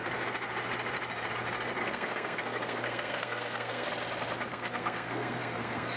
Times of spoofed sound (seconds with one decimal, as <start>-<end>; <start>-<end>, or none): 1.8-3.9; 4.5-6.0